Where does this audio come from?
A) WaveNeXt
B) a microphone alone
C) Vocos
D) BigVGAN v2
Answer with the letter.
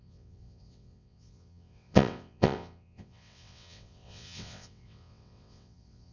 A